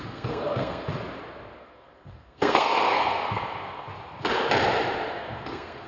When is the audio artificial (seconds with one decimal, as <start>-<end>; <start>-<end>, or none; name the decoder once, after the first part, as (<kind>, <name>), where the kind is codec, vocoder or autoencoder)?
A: 0.0-0.9 (codec, SNAC); 1.6-3.9; 5.1-5.9